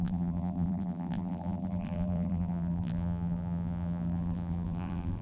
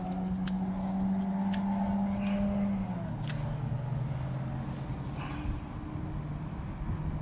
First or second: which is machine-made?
first